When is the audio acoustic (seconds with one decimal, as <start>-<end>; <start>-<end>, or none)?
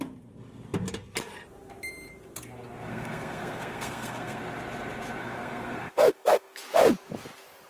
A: 0.0-2.9; 4.4-5.2; 6.6-7.7